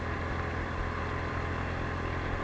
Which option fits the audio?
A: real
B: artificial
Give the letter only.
A